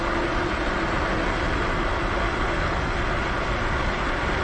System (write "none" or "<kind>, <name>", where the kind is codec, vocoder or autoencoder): none